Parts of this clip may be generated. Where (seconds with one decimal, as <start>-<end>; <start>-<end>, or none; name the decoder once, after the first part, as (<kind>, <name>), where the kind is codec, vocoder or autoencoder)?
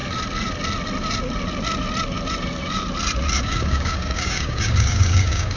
3.4-5.6 (codec, DAC)